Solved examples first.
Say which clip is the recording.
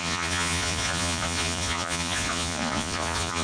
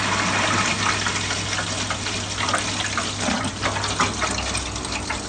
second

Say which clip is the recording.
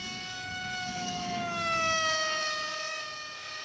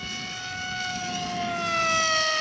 second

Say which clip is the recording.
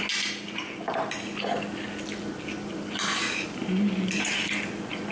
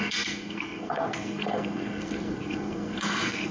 first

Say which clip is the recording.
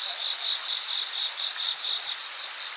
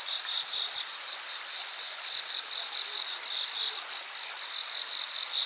first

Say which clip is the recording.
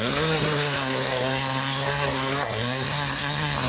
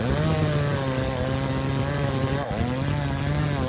second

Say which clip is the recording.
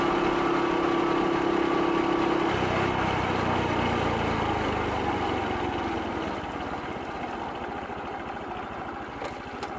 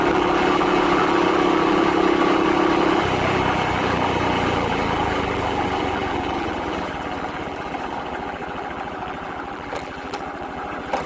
first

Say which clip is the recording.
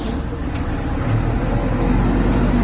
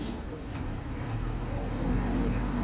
first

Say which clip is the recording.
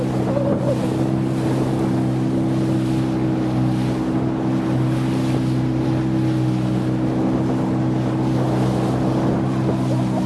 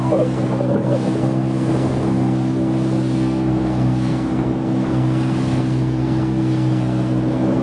first